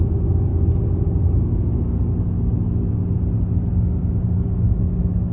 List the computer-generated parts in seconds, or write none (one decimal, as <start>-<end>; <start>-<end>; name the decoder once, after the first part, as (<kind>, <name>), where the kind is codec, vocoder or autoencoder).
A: none